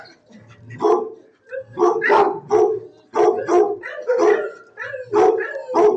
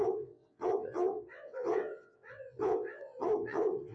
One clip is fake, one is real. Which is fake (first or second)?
second